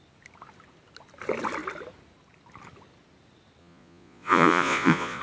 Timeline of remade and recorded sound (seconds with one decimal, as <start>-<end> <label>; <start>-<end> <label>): 0.0-3.6 recorded; 3.6-5.2 remade